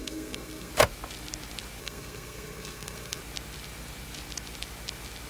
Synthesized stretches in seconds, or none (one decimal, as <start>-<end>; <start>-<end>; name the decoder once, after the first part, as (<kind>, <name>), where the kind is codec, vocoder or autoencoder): 0.0-0.7 (codec, SNAC); 1.8-3.2